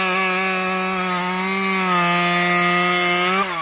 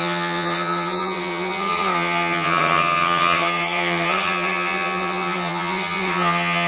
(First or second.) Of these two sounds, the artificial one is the second